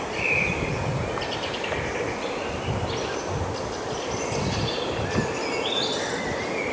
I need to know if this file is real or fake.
real